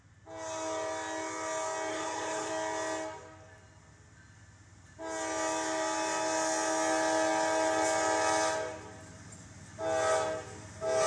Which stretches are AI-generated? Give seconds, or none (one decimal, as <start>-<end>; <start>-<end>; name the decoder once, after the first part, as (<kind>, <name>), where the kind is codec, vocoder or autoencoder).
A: 1.9-2.5 (codec, HILCodec)